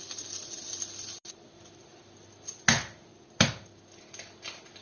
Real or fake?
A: real